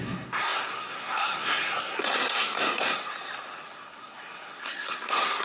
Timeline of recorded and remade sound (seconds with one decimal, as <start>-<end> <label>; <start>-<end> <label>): 0.0-3.0 remade; 3.0-3.7 recorded; 3.7-5.4 remade